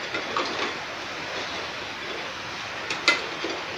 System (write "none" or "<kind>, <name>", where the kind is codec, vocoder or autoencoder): none